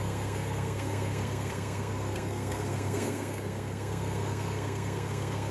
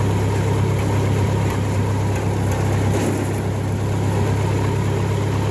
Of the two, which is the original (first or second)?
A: second